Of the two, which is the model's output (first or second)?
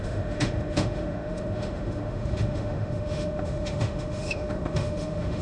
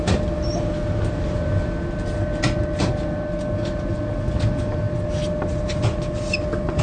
first